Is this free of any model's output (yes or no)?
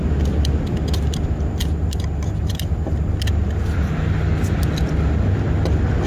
yes